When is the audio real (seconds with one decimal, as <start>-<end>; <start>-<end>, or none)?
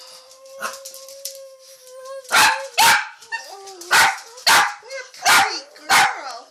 0.0-6.5